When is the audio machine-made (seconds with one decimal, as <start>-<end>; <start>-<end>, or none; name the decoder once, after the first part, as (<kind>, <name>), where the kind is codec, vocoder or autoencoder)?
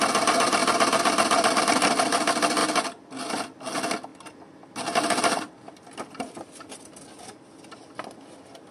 0.6-1.6 (vocoder, BigVGAN v2); 2.6-3.4; 4.1-5.9